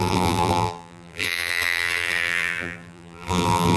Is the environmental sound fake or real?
fake